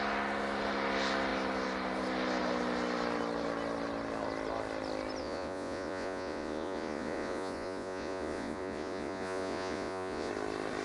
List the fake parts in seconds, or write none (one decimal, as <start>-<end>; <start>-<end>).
5.2-10.3